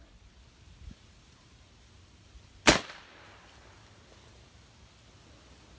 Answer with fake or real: real